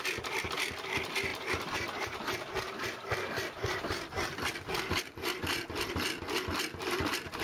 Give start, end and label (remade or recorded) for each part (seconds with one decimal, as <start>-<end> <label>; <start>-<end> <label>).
0.0-7.4 recorded